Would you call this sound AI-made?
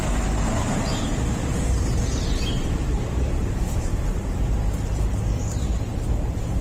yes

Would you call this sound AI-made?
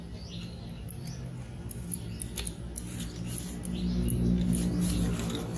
no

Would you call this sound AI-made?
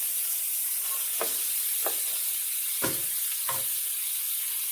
no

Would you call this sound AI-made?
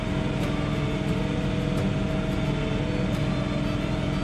no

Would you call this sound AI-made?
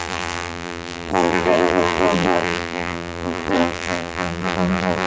yes